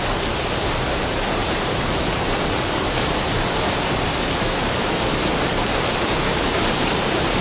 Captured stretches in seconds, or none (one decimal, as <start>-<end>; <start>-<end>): 0.0-1.4; 4.1-5.1; 5.8-6.3